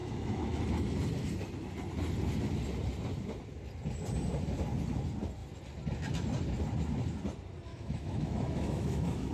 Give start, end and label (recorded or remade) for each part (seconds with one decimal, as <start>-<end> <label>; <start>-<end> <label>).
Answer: 0.0-0.6 remade; 0.6-7.7 recorded; 7.7-9.3 remade